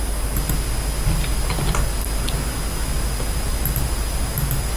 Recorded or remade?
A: recorded